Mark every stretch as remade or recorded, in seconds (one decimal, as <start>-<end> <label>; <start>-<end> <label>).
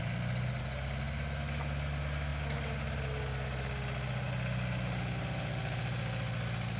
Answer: 0.0-6.8 recorded